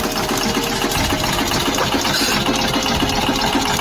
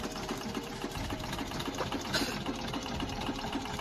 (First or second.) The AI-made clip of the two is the second